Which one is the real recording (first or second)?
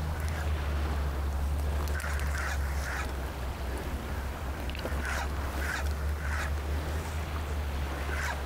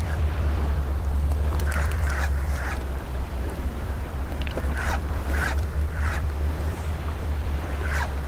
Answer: first